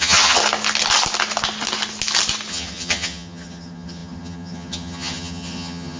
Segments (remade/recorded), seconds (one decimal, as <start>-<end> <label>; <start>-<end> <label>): 0.0-0.4 remade; 0.4-2.5 recorded; 2.5-6.0 remade